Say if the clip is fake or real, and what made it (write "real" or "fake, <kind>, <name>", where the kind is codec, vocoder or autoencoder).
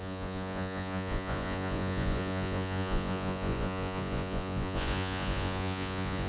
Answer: fake, vocoder, Vocos